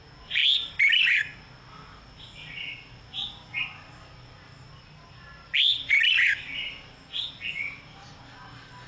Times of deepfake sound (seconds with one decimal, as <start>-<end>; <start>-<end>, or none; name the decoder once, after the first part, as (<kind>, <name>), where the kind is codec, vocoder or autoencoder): none